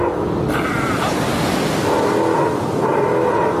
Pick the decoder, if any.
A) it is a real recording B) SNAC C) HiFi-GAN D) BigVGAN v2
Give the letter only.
A